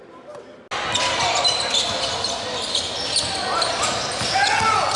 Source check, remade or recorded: recorded